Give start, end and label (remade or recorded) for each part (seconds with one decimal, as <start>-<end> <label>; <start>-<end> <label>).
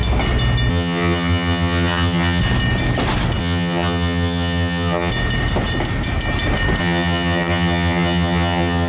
0.0-0.7 recorded; 0.7-2.4 remade; 2.4-3.4 recorded; 3.4-5.1 remade; 5.1-6.8 recorded; 6.8-8.9 remade